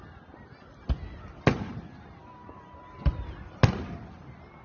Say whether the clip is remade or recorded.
recorded